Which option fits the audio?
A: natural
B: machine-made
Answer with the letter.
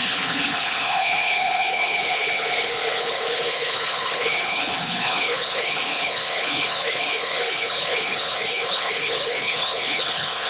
B